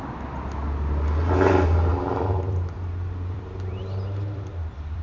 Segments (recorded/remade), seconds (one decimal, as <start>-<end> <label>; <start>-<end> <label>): 0.0-1.9 recorded; 1.9-5.0 remade